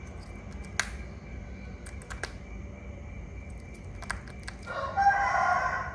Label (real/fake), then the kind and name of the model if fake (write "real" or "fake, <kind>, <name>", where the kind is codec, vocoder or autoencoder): real